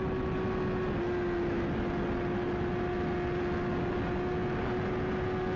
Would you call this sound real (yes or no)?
yes